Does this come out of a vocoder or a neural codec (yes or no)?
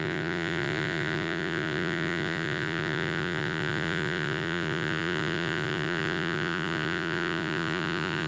yes